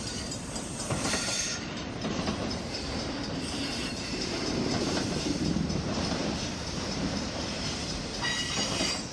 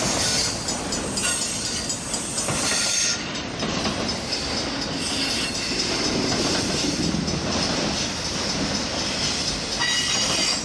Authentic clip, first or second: second